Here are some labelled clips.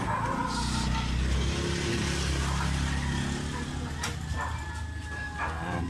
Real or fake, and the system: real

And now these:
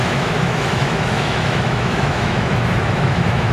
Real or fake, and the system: fake, autoencoder, DAC-VAE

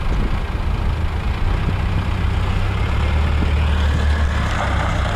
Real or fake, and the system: real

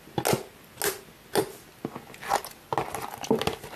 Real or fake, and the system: real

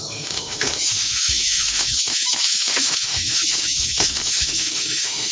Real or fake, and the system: fake, autoencoder, DAC-VAE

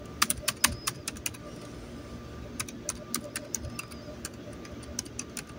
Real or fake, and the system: real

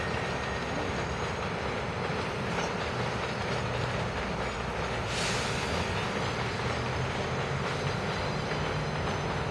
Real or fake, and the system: real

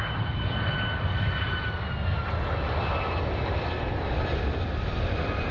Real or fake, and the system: real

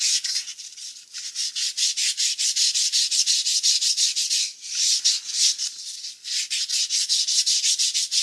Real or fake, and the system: real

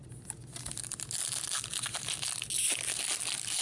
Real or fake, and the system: real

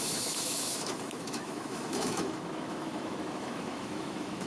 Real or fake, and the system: fake, autoencoder, DAC-VAE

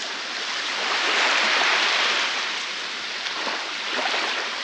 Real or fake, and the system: real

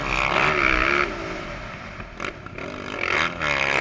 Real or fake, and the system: real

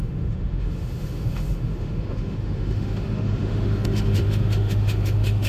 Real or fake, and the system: fake, autoencoder, DAC-VAE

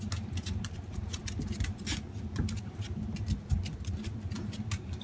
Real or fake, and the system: real